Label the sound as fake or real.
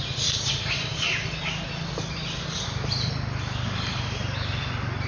real